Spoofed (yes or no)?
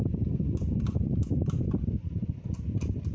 no